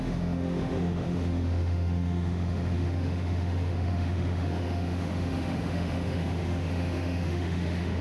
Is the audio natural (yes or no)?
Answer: no